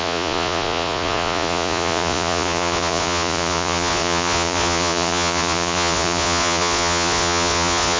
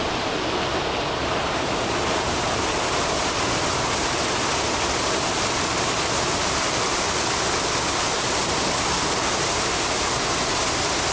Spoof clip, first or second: first